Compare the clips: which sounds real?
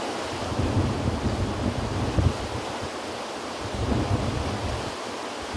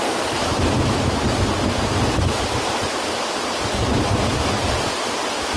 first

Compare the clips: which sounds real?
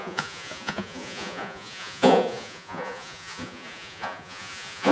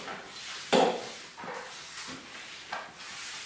second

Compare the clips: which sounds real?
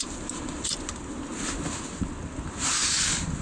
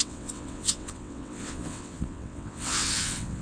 first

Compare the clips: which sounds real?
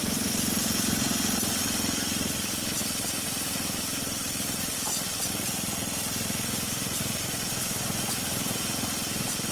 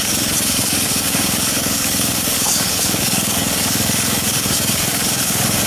first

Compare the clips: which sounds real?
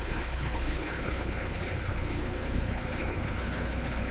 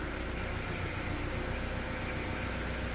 second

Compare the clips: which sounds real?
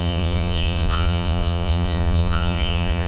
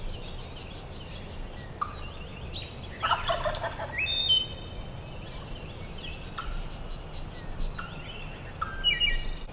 second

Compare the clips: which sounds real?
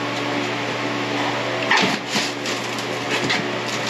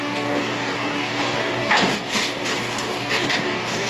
first